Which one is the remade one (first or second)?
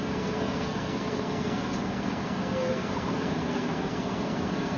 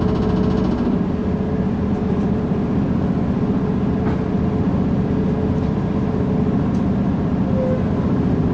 first